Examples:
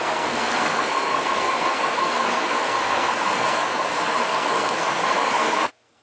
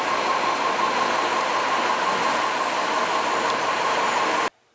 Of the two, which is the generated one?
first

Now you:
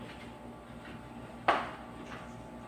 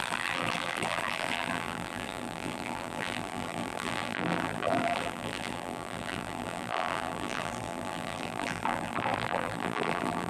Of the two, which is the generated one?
second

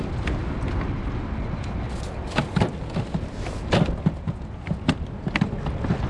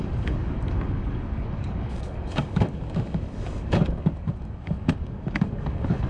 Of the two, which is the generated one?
second